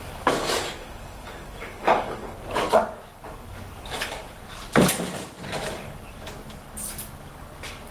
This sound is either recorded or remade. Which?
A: remade